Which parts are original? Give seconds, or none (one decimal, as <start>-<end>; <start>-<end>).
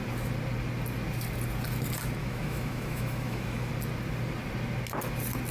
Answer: 0.0-2.2; 3.7-5.5